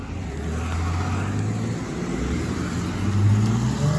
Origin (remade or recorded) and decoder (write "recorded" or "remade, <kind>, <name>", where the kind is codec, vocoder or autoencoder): recorded